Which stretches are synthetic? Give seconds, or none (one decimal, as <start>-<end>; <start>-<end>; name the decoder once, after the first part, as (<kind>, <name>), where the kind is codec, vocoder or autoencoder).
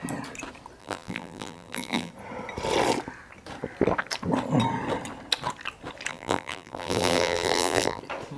0.8-2.1 (vocoder, BigVGAN v2); 6.1-8.0